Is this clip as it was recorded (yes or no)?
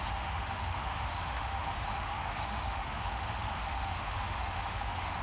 no